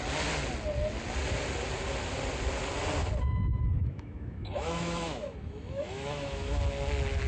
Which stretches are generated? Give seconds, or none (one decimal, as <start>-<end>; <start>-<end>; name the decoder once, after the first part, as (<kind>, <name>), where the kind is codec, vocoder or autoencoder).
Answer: 3.5-6.6 (autoencoder, DAC-VAE)